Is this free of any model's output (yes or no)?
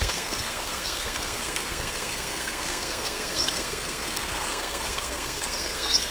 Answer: no